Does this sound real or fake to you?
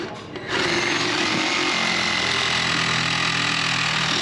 real